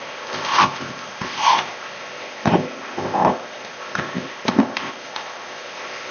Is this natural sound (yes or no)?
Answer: no